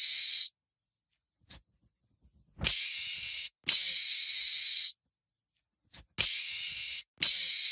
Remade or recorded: recorded